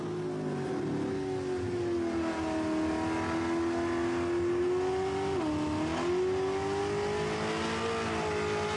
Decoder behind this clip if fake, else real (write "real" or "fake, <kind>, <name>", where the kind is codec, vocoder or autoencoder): real